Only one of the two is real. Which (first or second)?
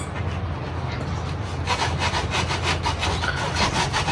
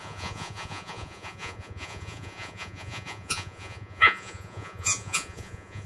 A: first